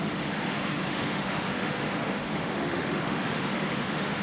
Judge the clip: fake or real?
fake